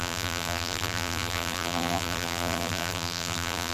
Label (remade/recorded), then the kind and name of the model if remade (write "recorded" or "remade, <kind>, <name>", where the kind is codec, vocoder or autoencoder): remade, vocoder, BigVGAN v2